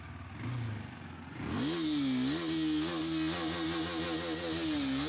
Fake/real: real